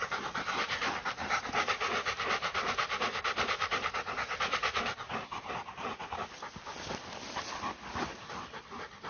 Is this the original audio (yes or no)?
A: yes